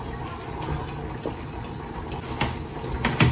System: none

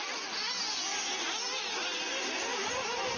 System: none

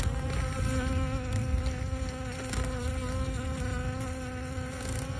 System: none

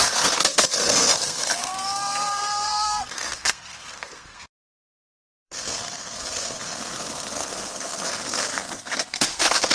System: codec, SNAC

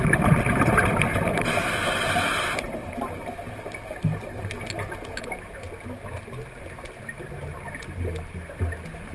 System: none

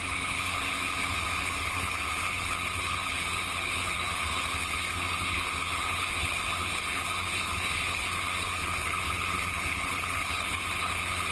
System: codec, HILCodec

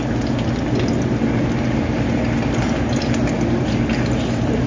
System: none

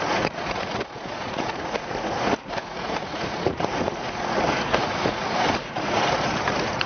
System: vocoder, Vocos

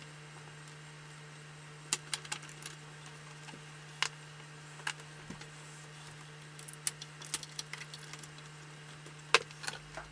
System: none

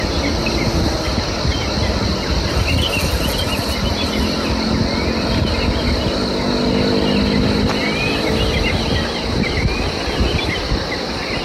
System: none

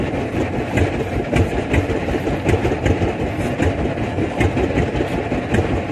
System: none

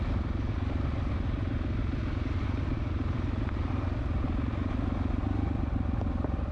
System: none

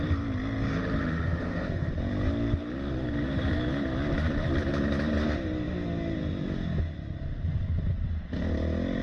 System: none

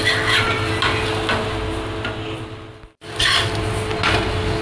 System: none